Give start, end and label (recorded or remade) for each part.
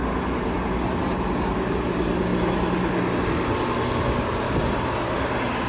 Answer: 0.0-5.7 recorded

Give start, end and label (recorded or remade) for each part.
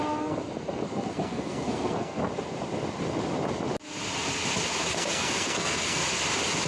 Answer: 0.0-2.2 remade; 2.2-4.9 recorded; 4.9-6.0 remade; 6.0-6.7 recorded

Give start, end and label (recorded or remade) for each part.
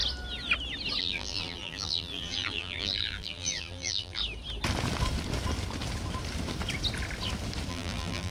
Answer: 0.0-1.0 recorded; 1.0-4.2 remade; 4.2-7.7 recorded; 7.7-8.3 remade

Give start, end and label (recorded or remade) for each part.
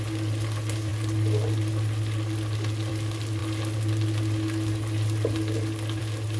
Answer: 0.0-6.4 recorded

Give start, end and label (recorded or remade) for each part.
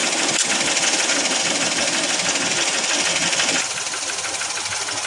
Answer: 0.0-5.1 recorded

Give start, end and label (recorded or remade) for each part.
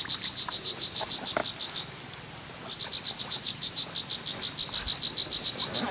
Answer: 0.0-1.4 remade; 1.4-3.2 recorded; 3.2-3.8 remade; 3.8-5.4 recorded; 5.4-5.9 remade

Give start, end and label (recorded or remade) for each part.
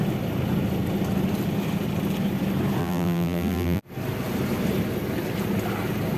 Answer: 0.0-2.8 recorded; 2.8-3.8 remade; 3.8-6.2 recorded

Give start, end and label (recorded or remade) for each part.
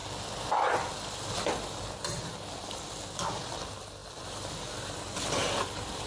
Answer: 0.0-6.1 recorded